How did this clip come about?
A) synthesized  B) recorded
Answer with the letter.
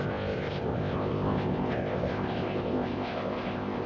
A